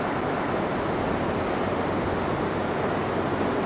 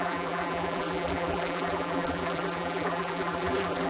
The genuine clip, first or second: first